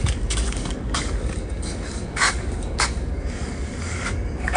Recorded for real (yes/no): no